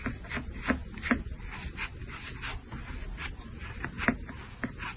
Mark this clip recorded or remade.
recorded